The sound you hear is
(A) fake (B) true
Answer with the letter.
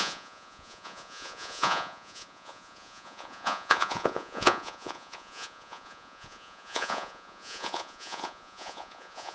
A